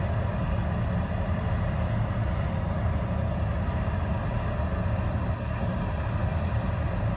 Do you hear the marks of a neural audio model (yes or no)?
no